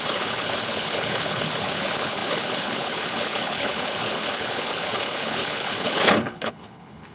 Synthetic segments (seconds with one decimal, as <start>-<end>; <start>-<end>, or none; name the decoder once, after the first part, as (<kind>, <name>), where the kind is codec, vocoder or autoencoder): 0.0-7.1 (codec, HILCodec)

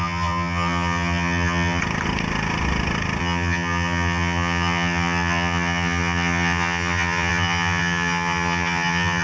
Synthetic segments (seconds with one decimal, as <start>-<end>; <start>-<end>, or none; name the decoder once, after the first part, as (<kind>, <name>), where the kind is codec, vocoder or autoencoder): 0.0-1.8 (vocoder, HiFi-GAN); 3.2-9.2

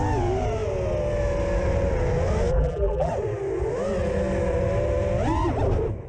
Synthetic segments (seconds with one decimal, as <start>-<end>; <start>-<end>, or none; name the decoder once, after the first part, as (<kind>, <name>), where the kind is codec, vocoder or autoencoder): 2.5-3.1 (vocoder, BigVGAN v2)

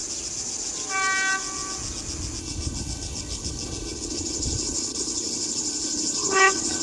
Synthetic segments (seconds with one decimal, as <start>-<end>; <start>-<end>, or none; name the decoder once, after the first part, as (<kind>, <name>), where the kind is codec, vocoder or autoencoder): 2.4-6.8 (codec, HILCodec)

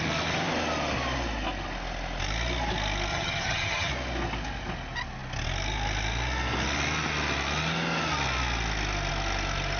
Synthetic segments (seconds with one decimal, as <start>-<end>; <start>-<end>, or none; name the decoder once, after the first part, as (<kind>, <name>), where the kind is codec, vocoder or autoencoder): 3.1-3.9 (vocoder, HiFi-GAN)

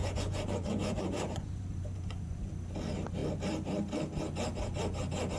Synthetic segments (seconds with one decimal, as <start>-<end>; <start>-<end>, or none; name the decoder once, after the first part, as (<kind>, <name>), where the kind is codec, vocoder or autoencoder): 0.0-2.5 (vocoder, Vocos)

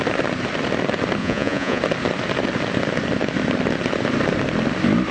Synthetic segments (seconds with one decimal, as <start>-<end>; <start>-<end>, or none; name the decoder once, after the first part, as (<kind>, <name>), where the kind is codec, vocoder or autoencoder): 1.2-1.8 (vocoder, Vocos)

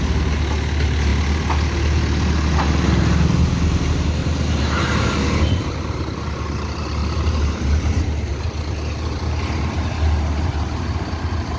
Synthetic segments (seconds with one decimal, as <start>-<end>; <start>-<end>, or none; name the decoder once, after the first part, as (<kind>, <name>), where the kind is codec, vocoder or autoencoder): 4.2-5.1 (vocoder, BigVGAN v2); 7.0-8.4